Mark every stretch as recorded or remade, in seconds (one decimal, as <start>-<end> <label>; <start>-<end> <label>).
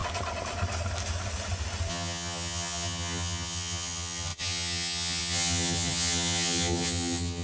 0.0-1.9 recorded; 1.9-7.4 remade